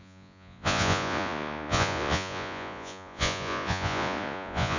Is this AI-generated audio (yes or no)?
yes